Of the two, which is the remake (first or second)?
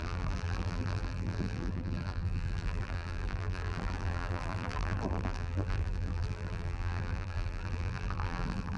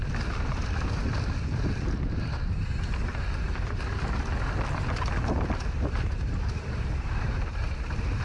first